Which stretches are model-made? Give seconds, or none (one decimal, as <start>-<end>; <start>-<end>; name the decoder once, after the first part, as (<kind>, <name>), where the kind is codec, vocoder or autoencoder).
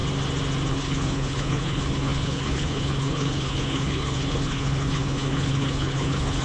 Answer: 0.7-6.4 (codec, HILCodec)